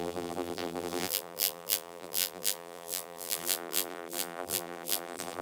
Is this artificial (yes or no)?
yes